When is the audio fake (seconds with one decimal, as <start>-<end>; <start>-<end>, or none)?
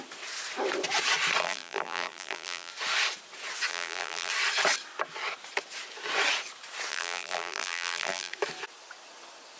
1.4-2.7; 3.7-4.3; 6.9-8.3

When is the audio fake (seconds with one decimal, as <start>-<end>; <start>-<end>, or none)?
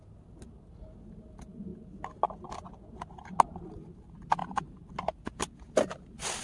4.4-4.9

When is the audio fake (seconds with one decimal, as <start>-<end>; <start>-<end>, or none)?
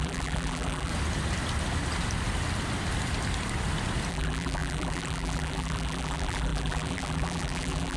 0.0-0.9; 4.1-8.0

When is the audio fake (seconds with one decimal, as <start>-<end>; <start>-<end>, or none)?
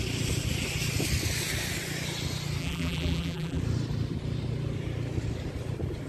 2.6-3.6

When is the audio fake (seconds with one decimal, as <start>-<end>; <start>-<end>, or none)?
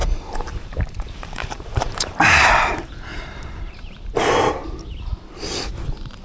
0.0-2.5; 3.1-4.5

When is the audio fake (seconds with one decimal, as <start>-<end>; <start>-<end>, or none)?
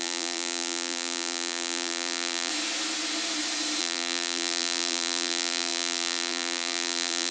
0.0-2.5; 3.8-7.3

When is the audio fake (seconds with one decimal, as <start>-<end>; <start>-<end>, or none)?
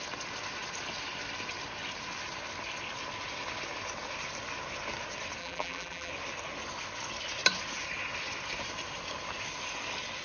5.4-6.1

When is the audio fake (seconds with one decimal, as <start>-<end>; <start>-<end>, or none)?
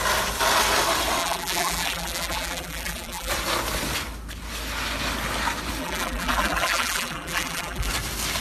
1.2-3.3; 5.8-7.9